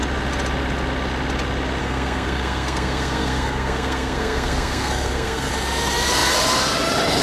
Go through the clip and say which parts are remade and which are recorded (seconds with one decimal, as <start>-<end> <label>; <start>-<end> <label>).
0.0-1.8 recorded; 1.8-5.5 remade; 5.5-7.2 recorded